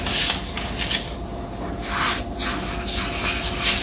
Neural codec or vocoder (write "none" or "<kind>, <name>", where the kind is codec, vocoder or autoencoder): none